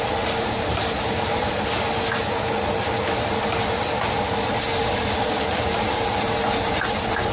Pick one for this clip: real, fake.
real